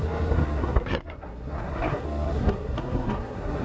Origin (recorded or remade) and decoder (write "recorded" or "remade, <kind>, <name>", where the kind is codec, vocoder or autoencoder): remade, codec, SNAC